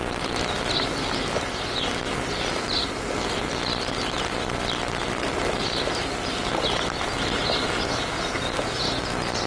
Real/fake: fake